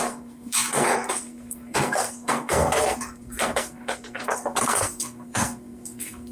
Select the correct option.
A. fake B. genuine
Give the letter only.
A